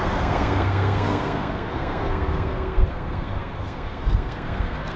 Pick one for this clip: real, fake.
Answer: fake